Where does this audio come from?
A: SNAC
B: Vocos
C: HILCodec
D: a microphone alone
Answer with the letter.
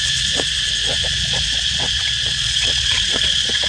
B